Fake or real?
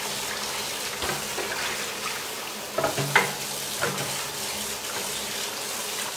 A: real